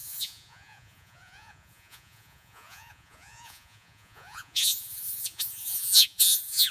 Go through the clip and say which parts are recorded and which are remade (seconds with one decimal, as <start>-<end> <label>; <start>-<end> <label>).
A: 0.0-6.7 remade